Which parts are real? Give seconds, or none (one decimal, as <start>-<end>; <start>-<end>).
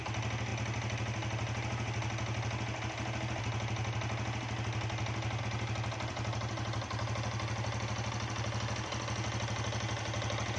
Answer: 0.0-10.6